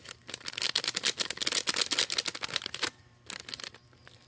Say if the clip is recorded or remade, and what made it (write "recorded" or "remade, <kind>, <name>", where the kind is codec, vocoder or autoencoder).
recorded